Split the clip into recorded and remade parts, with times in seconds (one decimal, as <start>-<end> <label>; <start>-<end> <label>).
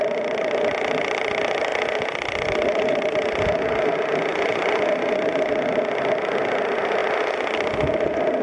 0.0-8.4 recorded